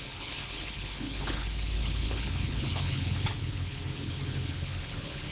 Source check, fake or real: fake